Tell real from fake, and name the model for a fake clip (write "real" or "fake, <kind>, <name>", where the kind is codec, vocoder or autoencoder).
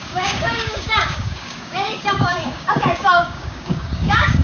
fake, codec, DAC